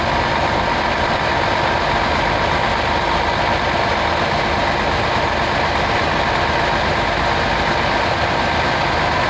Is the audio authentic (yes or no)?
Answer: yes